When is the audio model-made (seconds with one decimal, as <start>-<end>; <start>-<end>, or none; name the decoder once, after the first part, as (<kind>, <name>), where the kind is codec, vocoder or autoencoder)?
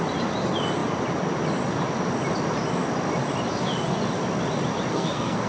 4.9-5.5 (codec, SNAC)